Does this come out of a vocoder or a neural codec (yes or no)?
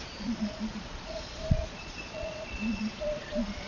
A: yes